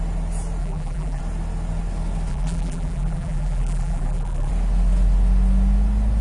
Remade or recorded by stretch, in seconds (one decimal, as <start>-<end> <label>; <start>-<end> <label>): 0.0-0.6 recorded; 0.6-1.2 remade; 1.2-2.3 recorded; 2.3-4.5 remade; 4.5-6.2 recorded

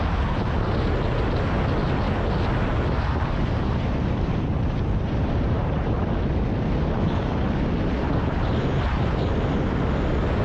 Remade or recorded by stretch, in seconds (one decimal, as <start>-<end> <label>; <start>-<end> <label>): 0.0-2.7 recorded; 2.7-6.0 remade; 6.0-10.4 recorded

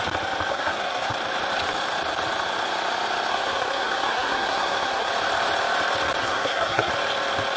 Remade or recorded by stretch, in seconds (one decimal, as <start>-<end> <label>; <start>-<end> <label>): 0.0-0.5 recorded; 0.5-1.1 remade; 1.1-3.3 recorded; 3.3-5.1 remade; 5.1-6.2 recorded; 6.2-6.9 remade; 6.9-7.6 recorded

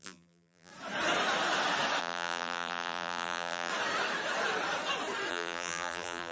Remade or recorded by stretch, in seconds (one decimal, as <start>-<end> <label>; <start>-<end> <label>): 0.0-0.7 remade; 0.7-2.0 recorded; 2.0-3.7 remade; 3.7-5.3 recorded; 5.3-6.3 remade